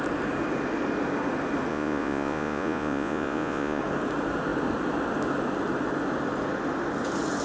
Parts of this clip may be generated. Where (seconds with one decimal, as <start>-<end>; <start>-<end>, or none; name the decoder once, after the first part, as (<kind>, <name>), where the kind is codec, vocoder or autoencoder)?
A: 1.7-3.8 (vocoder, Vocos)